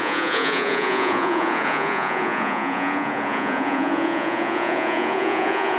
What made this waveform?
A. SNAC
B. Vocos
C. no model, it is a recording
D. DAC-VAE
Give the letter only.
B